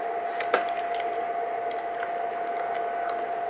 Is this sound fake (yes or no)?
no